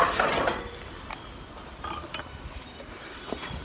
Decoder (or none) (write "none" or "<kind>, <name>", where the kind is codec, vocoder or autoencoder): none